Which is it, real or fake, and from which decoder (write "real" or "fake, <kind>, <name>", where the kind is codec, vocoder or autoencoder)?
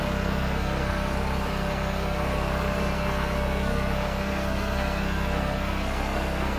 fake, codec, SNAC